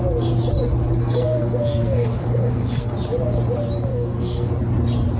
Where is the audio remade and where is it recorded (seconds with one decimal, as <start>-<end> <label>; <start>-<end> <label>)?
0.0-1.0 recorded; 1.0-2.9 remade; 2.9-3.9 recorded; 3.9-4.5 remade; 4.5-5.2 recorded